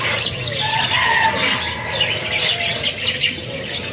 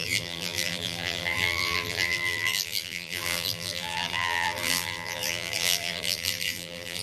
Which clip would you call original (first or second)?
first